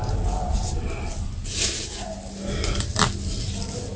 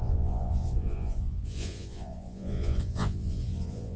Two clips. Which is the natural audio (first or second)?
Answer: first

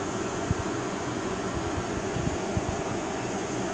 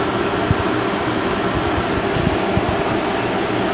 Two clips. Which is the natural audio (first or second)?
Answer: second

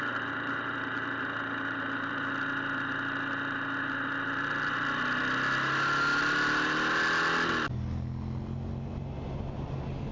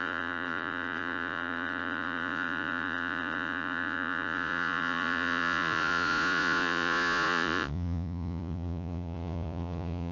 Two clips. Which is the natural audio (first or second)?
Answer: first